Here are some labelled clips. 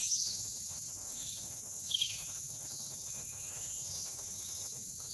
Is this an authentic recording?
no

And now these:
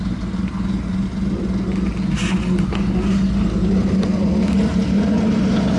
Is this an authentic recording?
yes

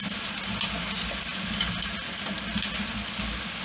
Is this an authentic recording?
yes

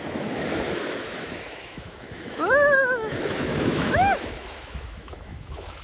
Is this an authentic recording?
no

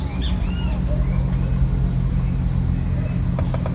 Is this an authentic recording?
yes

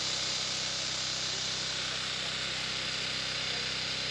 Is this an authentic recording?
yes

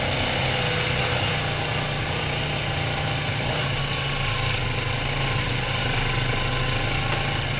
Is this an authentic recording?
yes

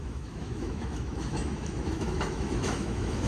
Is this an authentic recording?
no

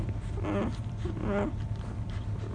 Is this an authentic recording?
yes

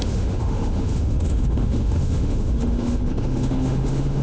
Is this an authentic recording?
no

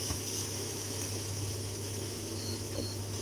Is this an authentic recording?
no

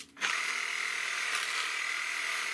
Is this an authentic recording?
yes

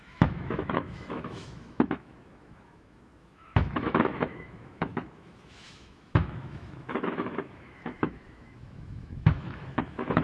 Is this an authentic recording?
no